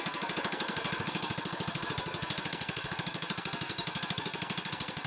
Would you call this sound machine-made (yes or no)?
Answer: yes